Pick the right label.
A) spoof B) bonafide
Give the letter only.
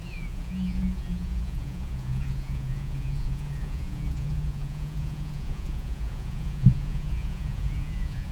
A